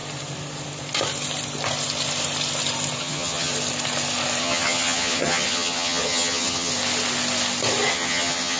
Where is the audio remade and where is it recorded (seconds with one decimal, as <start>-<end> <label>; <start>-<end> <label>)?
0.0-3.0 recorded; 3.0-3.5 remade; 3.5-4.4 recorded; 4.4-6.7 remade; 6.7-7.9 recorded; 7.9-8.6 remade